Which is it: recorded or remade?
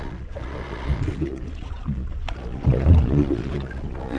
remade